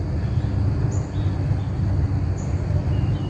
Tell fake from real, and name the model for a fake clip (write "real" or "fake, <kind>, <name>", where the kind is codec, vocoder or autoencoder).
real